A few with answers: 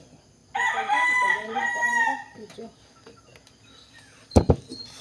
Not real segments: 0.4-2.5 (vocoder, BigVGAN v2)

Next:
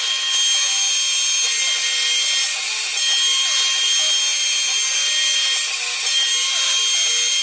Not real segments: none

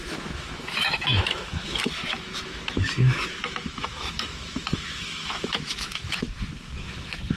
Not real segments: 0.0-7.4 (autoencoder, DAC-VAE)

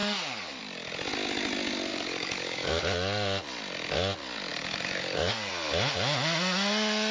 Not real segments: 0.0-0.6 (codec, DAC); 1.9-2.8; 4.5-5.5

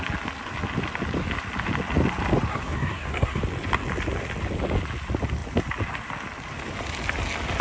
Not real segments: 2.5-3.4 (codec, SNAC)

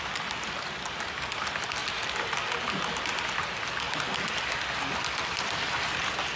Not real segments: none

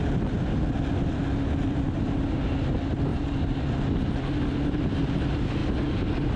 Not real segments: 3.1-3.6 (vocoder, BigVGAN v2)

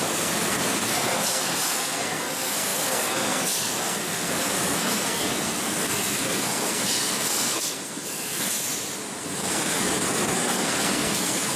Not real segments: 0.0-8.7 (codec, SNAC); 9.2-11.6